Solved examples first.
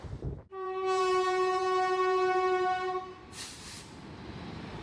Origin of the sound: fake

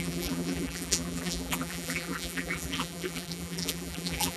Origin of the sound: fake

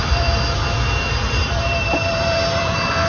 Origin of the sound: fake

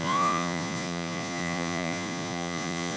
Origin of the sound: fake